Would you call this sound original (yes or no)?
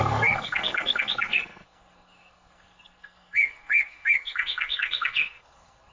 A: no